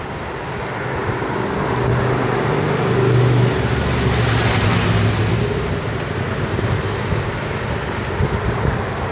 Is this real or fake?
real